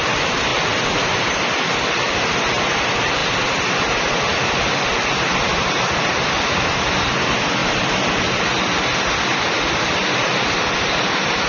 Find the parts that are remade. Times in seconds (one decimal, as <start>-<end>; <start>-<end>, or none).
0.5-1.8; 7.6-8.4